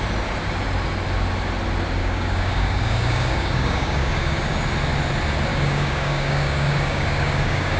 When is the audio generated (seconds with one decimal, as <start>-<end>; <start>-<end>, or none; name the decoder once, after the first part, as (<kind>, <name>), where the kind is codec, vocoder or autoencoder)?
2.0-4.4 (codec, DAC); 5.5-7.8